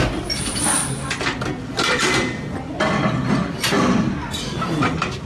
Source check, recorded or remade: recorded